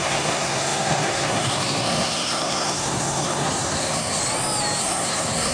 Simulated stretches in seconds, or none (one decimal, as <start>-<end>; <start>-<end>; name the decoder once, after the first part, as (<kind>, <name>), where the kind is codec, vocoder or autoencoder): 0.0-4.2 (codec, SNAC); 4.8-5.5